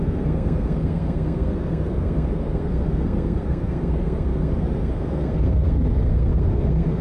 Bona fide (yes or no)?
no